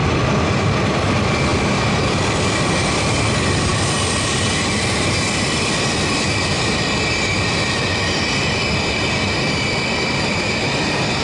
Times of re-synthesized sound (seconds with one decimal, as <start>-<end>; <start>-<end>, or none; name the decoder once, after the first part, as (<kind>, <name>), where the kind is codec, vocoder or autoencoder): none

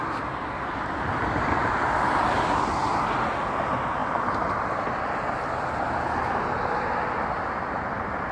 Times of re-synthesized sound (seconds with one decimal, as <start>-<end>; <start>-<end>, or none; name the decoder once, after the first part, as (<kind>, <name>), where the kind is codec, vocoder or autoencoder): none

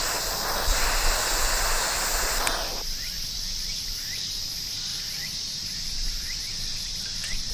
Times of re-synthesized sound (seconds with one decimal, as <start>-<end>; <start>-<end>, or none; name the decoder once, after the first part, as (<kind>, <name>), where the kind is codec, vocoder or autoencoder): none